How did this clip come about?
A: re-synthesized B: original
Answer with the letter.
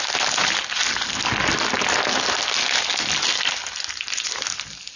B